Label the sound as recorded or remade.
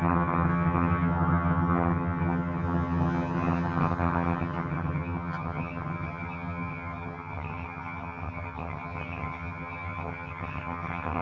remade